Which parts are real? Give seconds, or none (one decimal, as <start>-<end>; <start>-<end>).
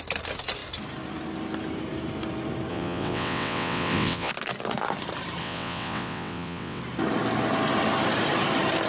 0.0-2.7; 4.3-5.4; 6.8-8.9